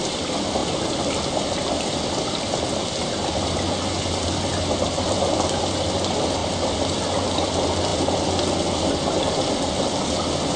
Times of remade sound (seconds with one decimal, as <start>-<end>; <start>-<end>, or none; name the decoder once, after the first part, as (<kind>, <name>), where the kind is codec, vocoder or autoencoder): 0.6-3.4 (vocoder, BigVGAN v2); 7.9-8.9